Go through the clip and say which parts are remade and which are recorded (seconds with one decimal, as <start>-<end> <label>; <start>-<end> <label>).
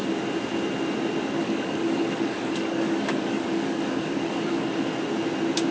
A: 0.0-1.4 recorded; 1.4-4.8 remade; 4.8-5.7 recorded